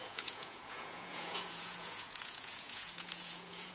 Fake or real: fake